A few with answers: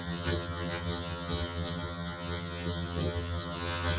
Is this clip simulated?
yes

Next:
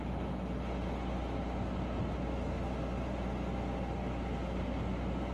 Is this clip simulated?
no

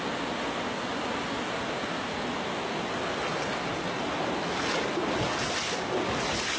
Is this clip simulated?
no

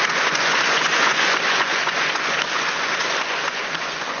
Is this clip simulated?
yes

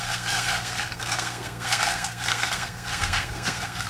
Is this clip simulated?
yes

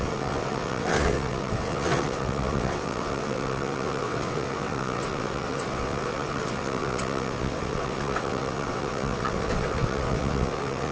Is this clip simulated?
yes